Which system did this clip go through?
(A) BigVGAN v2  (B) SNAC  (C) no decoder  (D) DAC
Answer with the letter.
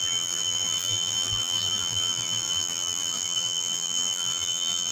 A